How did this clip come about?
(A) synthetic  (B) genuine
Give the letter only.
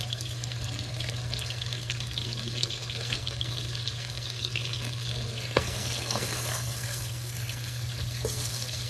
A